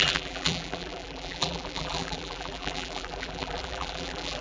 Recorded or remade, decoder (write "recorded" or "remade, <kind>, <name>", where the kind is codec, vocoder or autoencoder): remade, vocoder, BigVGAN v2